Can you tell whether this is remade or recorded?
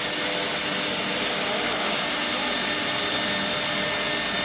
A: recorded